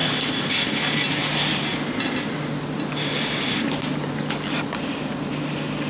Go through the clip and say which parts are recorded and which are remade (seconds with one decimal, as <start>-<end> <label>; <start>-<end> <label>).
0.0-5.9 recorded